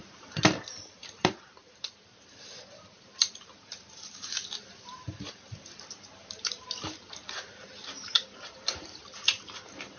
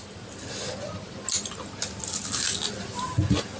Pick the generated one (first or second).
first